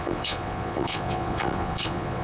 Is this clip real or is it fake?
fake